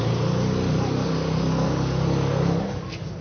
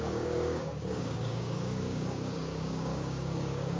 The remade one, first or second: second